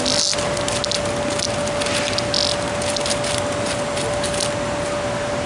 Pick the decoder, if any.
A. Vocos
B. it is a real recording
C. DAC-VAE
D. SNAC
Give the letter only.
B